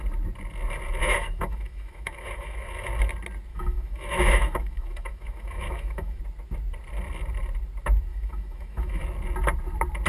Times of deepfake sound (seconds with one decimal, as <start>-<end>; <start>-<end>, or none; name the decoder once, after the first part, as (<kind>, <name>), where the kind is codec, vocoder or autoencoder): 1.0-2.7 (autoencoder, DAC-VAE); 3.5-6.2; 8.1-9.0